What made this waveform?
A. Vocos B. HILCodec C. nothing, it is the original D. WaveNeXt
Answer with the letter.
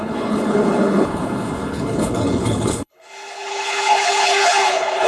B